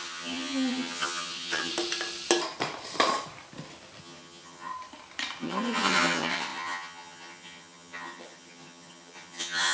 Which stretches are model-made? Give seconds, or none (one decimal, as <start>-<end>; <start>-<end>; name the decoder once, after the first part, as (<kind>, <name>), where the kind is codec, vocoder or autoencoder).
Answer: 0.0-1.7 (vocoder, HiFi-GAN); 4.0-4.7; 5.4-9.7